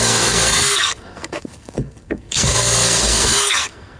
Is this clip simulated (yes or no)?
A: yes